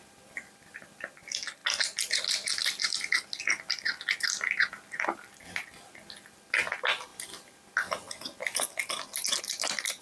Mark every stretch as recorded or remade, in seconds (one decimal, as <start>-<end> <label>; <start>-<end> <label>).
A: 0.0-10.0 recorded